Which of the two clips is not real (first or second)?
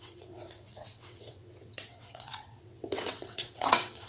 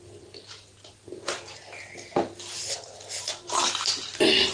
first